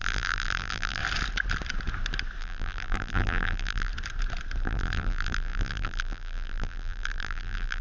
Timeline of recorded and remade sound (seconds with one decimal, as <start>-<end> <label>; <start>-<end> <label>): 0.0-1.0 remade; 1.0-2.4 recorded; 2.4-3.9 remade; 3.9-4.6 recorded; 4.6-7.8 remade